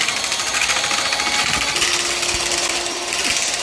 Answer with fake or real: real